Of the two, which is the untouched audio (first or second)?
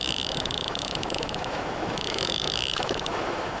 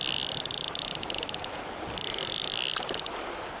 second